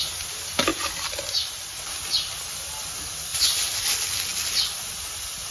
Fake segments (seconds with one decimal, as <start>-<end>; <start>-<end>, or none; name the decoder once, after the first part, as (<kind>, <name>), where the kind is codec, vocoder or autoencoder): 0.7-1.8 (vocoder, BigVGAN v2); 3.3-3.8